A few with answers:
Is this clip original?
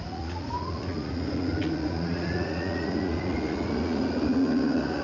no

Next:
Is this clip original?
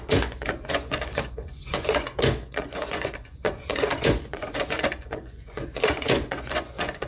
no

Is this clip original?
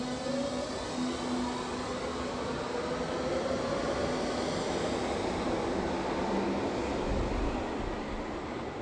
yes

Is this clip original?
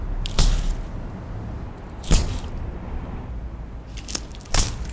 yes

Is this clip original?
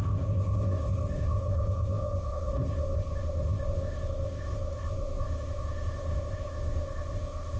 no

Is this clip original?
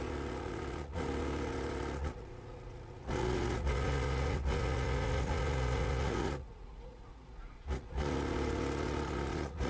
no